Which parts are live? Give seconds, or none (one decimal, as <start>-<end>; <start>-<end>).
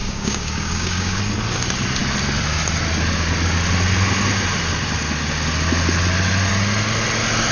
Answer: 1.2-7.5